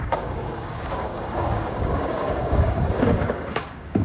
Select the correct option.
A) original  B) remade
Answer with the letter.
B